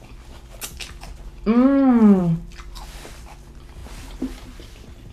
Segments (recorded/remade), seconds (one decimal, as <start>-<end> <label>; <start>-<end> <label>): 0.0-5.1 recorded